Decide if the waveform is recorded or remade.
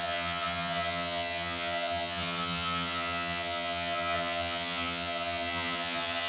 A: remade